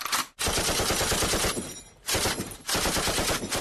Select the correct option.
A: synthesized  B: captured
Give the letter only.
B